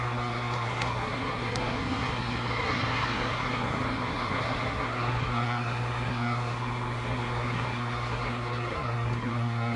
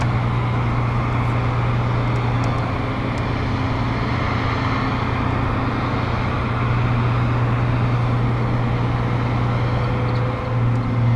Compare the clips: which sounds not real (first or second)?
first